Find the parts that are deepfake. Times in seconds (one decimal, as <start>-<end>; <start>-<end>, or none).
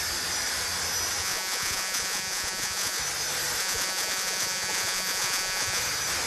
1.2-3.0; 3.6-5.8